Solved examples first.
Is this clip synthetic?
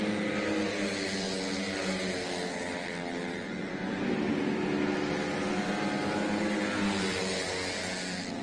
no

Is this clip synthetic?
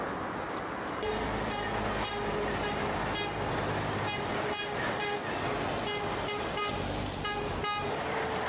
no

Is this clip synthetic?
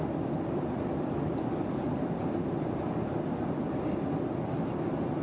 no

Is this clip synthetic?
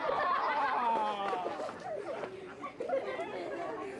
no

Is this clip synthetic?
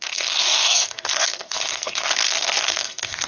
yes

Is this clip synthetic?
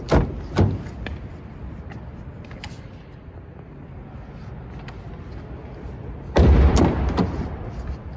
no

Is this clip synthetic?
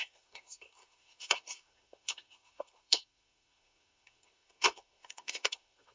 yes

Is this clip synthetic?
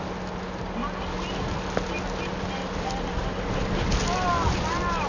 no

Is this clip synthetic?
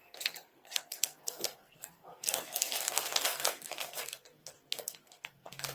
yes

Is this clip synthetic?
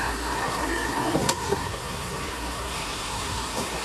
yes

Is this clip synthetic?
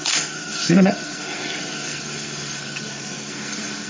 yes